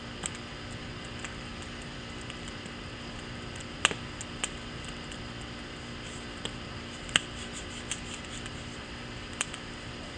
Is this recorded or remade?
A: recorded